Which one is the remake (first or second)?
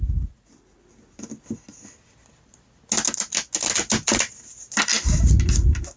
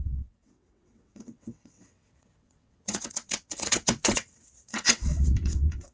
second